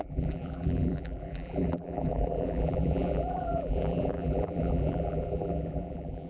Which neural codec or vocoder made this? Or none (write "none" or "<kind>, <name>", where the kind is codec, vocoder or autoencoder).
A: vocoder, BigVGAN v2